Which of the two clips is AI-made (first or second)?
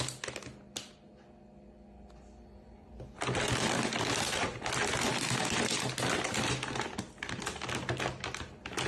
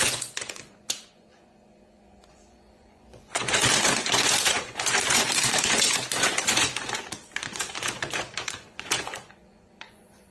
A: second